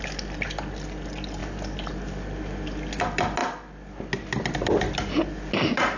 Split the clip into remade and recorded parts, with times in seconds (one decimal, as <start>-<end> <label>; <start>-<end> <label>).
0.0-6.0 recorded

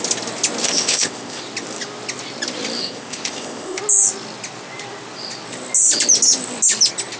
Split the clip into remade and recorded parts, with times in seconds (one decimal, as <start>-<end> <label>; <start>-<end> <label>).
0.0-0.6 recorded; 0.6-1.4 remade; 1.4-2.8 recorded; 2.8-3.8 remade; 3.8-7.2 recorded

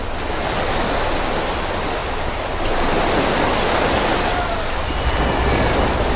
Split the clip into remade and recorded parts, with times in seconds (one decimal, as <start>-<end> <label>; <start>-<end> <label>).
0.0-6.2 recorded